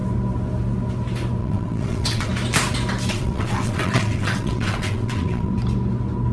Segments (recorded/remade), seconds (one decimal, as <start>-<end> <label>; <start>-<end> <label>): 0.0-1.4 recorded; 1.4-2.3 remade; 2.3-3.1 recorded; 3.1-5.5 remade; 5.5-6.3 recorded